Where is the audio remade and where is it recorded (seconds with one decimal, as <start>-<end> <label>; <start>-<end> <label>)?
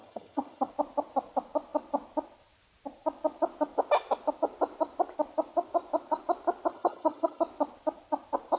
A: 0.0-0.7 remade; 0.7-6.7 recorded; 6.7-7.4 remade; 7.4-8.6 recorded